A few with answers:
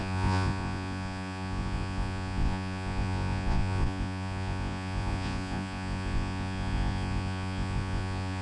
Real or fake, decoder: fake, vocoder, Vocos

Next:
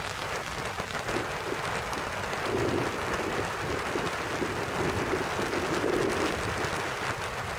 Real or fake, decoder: real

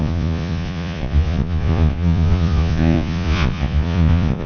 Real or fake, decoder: fake, vocoder, Vocos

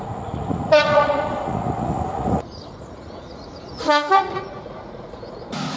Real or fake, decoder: fake, vocoder, Vocos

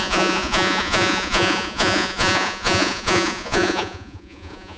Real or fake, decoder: fake, vocoder, Vocos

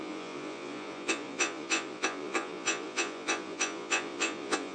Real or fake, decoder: fake, vocoder, Vocos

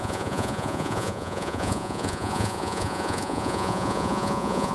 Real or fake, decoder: fake, vocoder, Vocos